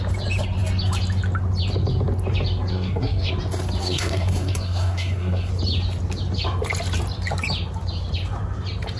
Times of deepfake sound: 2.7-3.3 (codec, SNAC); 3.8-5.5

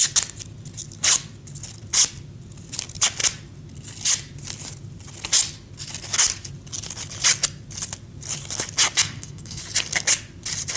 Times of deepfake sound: 9.0-9.6 (codec, SNAC)